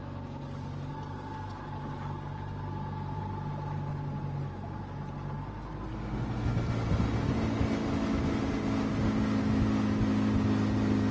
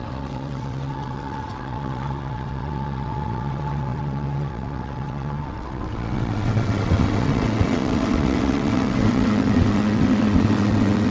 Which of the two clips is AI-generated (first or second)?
second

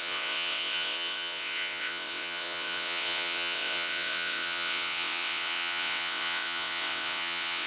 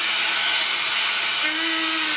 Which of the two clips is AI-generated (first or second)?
first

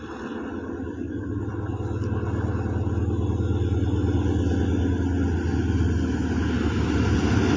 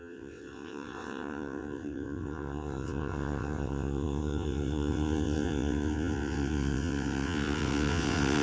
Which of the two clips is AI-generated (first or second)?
second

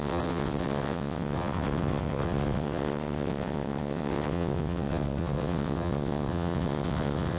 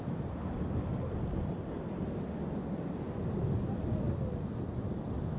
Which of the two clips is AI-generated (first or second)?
first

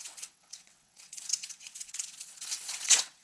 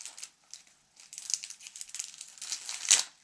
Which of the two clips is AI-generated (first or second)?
first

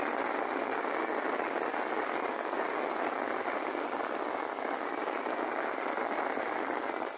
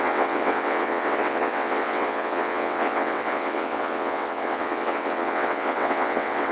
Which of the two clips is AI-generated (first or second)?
second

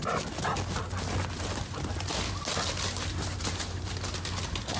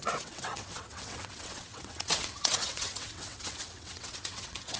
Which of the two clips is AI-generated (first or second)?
second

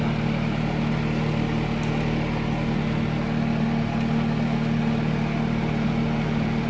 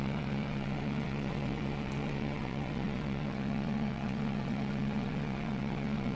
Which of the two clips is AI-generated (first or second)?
second